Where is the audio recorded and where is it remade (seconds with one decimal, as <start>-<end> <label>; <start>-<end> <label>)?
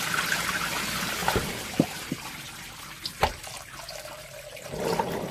0.0-5.3 recorded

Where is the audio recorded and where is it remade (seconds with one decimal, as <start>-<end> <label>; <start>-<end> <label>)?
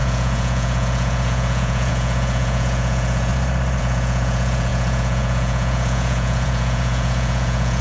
0.0-3.3 remade; 3.3-3.8 recorded; 3.8-7.8 remade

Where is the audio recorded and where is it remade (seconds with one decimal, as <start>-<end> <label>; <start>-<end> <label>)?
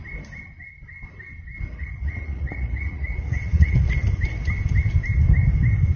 0.0-1.7 recorded; 1.7-3.9 remade; 3.9-6.0 recorded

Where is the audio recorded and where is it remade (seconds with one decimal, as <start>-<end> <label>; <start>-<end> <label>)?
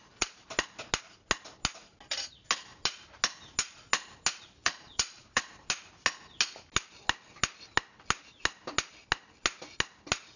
0.0-4.6 recorded; 4.6-5.4 remade; 5.4-10.4 recorded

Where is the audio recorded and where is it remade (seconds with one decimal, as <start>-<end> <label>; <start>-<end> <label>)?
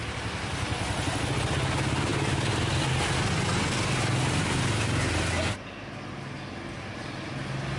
0.0-7.8 recorded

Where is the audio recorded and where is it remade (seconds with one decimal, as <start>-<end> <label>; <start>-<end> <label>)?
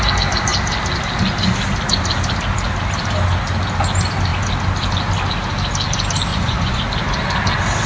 0.0-6.3 recorded; 6.3-6.8 remade; 6.8-7.9 recorded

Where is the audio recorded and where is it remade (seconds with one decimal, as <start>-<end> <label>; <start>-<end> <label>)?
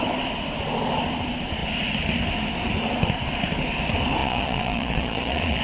0.0-4.2 recorded; 4.2-5.6 remade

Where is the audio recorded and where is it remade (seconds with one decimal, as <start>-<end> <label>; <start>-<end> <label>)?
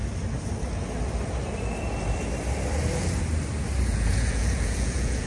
0.0-3.9 recorded; 3.9-5.3 remade